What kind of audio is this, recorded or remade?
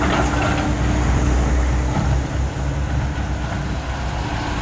recorded